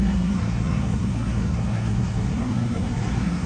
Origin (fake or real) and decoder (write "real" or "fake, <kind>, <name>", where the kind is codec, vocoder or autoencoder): fake, codec, SNAC